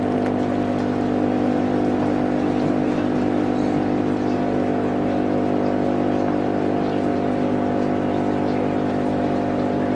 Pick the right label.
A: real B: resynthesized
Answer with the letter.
A